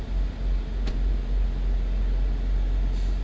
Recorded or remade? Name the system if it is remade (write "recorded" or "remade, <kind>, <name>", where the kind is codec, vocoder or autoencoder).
recorded